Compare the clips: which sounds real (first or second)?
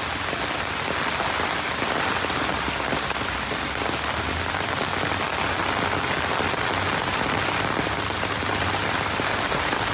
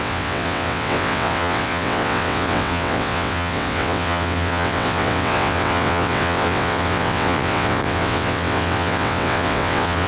first